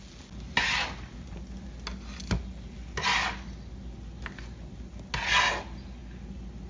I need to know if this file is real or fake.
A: real